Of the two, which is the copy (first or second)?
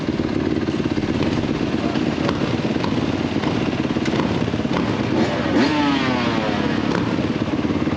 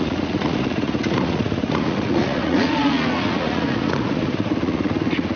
second